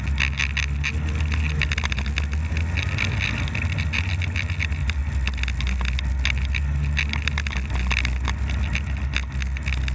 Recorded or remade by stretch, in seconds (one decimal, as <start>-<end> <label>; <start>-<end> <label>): 0.0-9.9 recorded